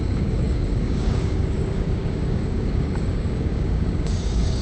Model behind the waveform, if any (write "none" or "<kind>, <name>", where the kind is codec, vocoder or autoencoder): codec, DAC